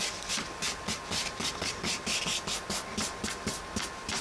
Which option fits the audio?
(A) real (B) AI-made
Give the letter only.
A